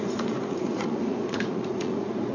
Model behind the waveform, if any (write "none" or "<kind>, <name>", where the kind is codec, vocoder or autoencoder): vocoder, Vocos